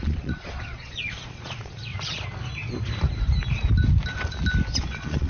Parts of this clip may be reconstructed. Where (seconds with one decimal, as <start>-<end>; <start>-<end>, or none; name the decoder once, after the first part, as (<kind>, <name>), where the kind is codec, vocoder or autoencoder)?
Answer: 0.0-1.9 (vocoder, Vocos); 4.8-5.3